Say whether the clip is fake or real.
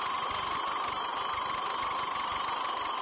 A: real